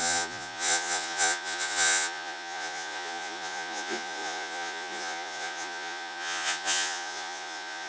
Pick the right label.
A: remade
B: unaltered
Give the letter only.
A